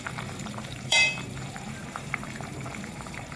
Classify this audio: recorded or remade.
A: remade